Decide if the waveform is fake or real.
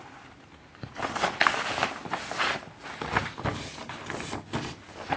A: real